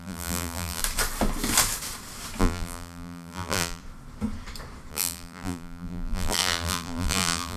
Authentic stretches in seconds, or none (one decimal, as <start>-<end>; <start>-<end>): 0.8-2.4; 3.8-4.9